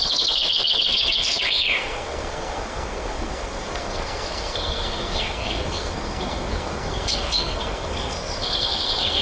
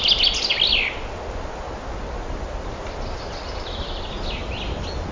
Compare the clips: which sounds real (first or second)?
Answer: second